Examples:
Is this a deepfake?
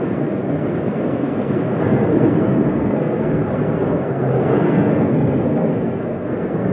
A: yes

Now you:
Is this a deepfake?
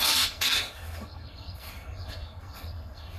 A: yes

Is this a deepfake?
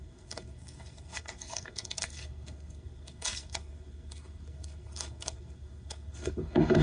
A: yes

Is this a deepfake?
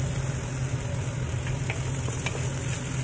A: no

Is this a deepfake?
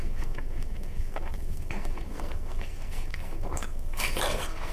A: yes